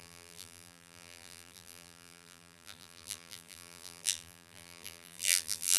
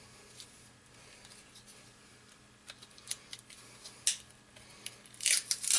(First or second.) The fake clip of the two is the first